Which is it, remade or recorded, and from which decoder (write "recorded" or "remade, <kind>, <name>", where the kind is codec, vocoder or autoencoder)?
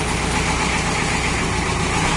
recorded